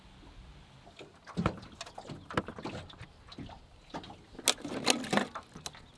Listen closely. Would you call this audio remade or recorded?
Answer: recorded